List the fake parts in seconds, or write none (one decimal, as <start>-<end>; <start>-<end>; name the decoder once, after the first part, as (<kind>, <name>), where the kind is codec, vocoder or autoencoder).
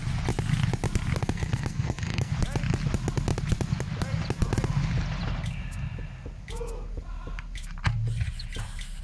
1.2-2.3 (codec, SNAC)